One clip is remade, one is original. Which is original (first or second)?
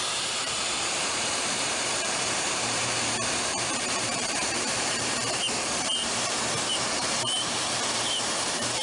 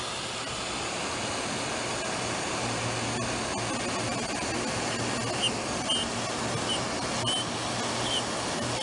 second